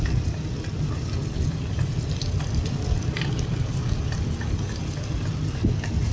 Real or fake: real